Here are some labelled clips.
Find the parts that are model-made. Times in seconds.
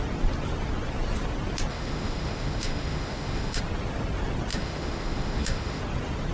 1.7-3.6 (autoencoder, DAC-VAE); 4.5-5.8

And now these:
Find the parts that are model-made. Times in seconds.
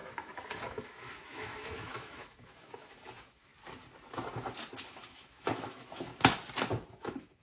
0.0-3.5 (autoencoder, DAC-VAE); 4.8-6.1; 6.9-7.4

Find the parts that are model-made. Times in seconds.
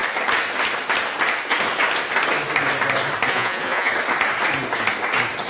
3.3-3.9 (vocoder, Vocos)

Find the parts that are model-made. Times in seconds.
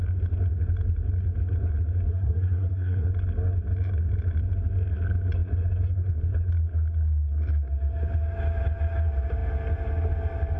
2.1-3.1 (codec, SNAC)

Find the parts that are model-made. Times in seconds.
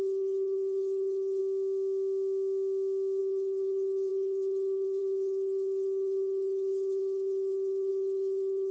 0.0-1.4 (codec, HILCodec); 3.2-8.7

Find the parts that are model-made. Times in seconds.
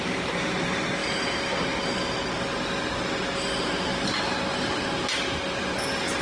none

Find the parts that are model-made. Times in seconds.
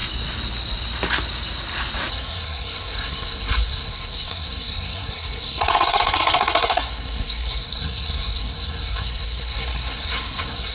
2.1-10.7 (codec, SNAC)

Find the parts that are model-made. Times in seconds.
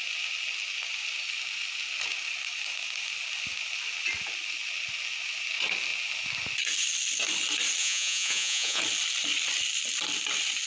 7.8-8.8 (vocoder, Vocos)